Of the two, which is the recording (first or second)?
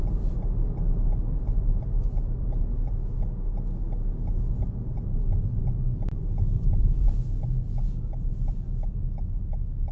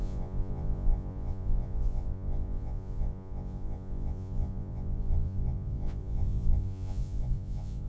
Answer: first